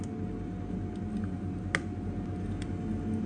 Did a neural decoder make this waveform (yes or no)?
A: no